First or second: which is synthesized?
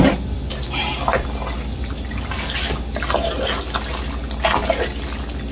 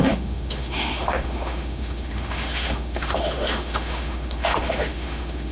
second